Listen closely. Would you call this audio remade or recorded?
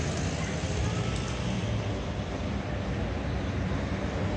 recorded